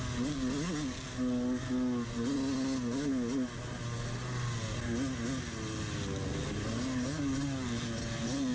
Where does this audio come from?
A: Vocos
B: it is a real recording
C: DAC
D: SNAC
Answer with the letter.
B